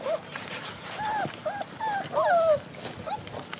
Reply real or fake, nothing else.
real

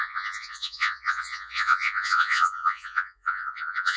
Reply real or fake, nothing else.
fake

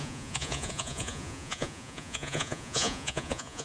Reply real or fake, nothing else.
fake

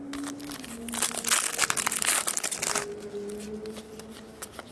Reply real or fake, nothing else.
real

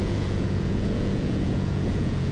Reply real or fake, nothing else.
fake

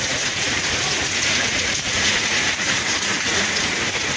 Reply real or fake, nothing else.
fake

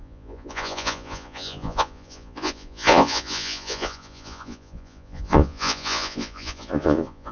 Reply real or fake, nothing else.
fake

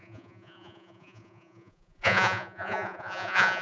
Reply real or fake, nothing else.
fake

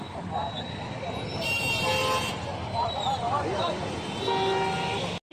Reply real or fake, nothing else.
real